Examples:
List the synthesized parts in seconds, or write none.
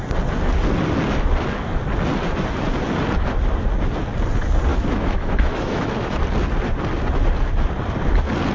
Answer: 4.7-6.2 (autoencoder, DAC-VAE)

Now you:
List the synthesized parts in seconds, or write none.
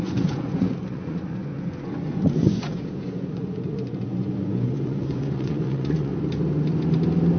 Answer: 0.0-6.1 (vocoder, Vocos)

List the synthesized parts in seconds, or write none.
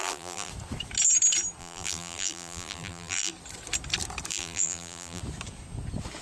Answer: 0.0-0.5 (vocoder, BigVGAN v2); 1.6-3.3; 4.3-5.2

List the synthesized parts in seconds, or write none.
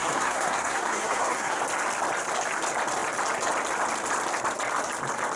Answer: 0.0-1.6 (codec, SNAC)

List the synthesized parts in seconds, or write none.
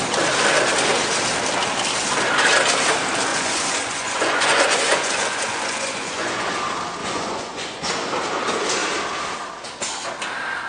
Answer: 3.3-6.5 (vocoder, Vocos); 7.0-7.9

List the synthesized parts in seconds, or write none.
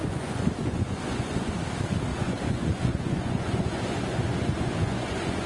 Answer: 0.0-1.5 (vocoder, Vocos); 2.1-5.5